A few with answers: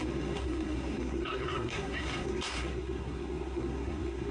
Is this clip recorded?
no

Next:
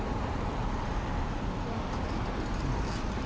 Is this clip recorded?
yes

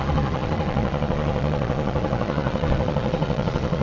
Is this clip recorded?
no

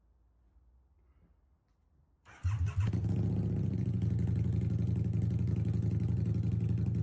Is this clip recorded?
yes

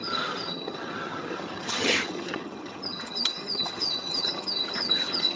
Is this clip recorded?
no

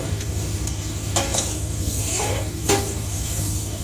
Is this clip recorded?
no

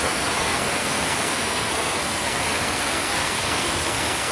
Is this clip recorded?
no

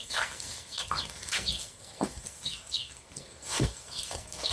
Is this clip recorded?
no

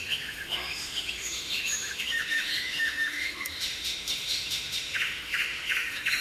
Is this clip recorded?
no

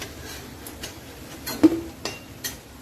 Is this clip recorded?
yes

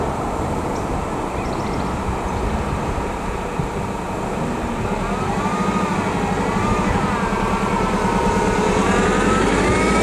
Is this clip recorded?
yes